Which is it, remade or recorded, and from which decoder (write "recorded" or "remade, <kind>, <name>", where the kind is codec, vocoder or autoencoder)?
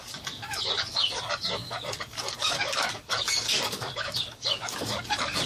remade, codec, DAC